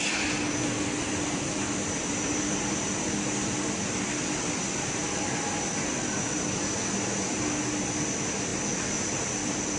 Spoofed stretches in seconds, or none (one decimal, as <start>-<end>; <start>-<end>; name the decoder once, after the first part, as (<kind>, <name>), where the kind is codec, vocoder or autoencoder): 0.0-8.5 (vocoder, BigVGAN v2)